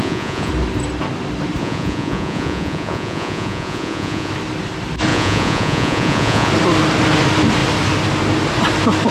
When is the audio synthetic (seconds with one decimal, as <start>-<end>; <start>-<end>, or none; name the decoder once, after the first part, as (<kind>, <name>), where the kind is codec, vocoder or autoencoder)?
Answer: 0.0-0.5 (vocoder, Vocos); 1.6-4.3; 5.1-6.5